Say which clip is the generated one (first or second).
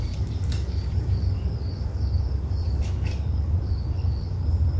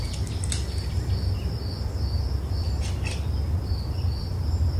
first